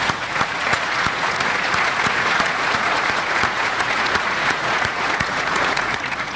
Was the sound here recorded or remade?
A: remade